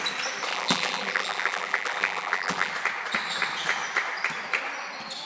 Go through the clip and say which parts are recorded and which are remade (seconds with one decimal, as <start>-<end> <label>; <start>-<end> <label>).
0.0-0.5 recorded; 0.5-2.7 remade; 2.7-5.2 recorded

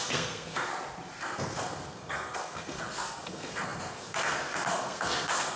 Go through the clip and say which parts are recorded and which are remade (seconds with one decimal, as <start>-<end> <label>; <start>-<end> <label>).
0.0-0.7 remade; 0.7-1.2 recorded; 1.2-5.6 remade

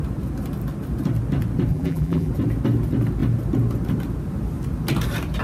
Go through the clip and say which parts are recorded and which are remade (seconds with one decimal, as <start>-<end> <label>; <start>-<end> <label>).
0.0-1.7 recorded; 1.7-2.3 remade; 2.3-5.4 recorded

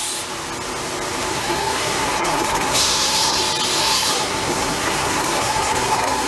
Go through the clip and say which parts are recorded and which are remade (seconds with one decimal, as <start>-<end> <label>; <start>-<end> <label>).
0.0-1.3 recorded; 1.3-3.4 remade; 3.4-3.8 recorded; 3.8-6.3 remade

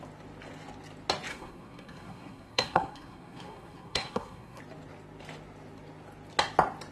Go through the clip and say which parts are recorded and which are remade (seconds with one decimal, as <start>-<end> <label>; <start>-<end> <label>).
0.0-1.3 recorded; 1.3-4.6 remade; 4.6-6.9 recorded

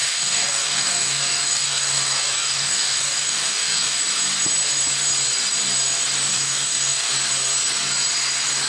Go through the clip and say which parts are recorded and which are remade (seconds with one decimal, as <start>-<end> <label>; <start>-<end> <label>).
0.0-4.0 remade; 4.0-6.3 recorded; 6.3-7.1 remade; 7.1-8.7 recorded

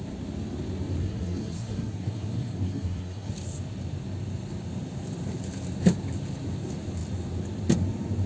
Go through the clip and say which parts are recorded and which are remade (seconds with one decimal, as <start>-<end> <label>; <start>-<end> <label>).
0.0-1.0 recorded; 1.0-3.3 remade; 3.3-8.3 recorded

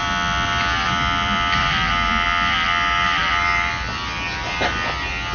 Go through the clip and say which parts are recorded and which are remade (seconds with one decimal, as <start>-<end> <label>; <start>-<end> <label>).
0.0-5.3 remade